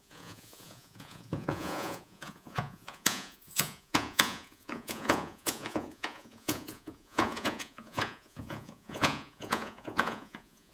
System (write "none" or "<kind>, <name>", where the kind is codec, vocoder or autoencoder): vocoder, Vocos